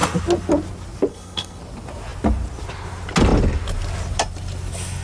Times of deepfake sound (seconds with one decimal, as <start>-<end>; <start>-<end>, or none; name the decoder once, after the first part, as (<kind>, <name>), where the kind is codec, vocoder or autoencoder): 1.1-1.6 (codec, SNAC)